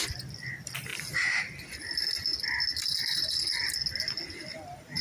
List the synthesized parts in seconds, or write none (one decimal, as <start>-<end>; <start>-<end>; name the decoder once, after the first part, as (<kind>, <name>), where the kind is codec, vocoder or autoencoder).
none